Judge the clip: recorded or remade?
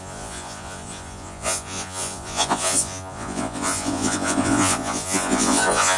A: remade